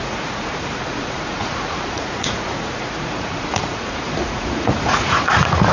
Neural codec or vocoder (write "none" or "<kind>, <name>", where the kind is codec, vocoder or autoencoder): vocoder, Vocos